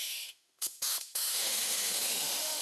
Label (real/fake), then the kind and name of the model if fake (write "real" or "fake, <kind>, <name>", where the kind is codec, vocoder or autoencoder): fake, autoencoder, DAC-VAE